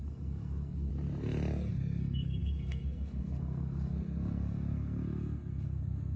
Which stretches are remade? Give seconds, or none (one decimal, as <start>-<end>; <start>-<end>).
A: 0.0-0.9; 1.7-6.2